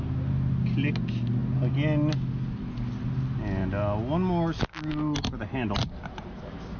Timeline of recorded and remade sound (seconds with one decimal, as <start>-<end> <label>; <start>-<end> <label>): 0.0-5.8 recorded; 5.8-6.8 remade

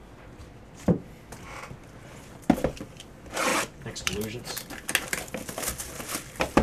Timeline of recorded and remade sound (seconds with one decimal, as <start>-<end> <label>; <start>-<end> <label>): 0.0-3.5 recorded; 3.5-4.4 remade; 4.4-6.6 recorded

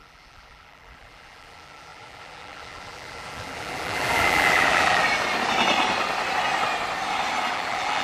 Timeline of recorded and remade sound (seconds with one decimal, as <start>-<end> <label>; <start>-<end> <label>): 0.0-5.0 remade; 5.0-7.5 recorded; 7.5-8.0 remade

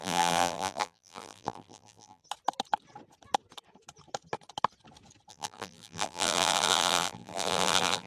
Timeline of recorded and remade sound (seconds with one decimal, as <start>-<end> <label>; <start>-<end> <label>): 0.0-2.2 remade; 2.2-5.3 recorded; 5.3-8.1 remade